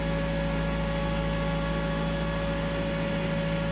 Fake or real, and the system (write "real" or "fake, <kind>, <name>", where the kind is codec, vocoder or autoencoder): real